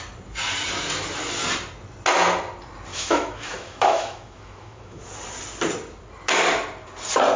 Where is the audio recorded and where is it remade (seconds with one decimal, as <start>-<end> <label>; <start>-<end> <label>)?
0.0-2.9 recorded; 2.9-5.0 remade; 5.0-7.4 recorded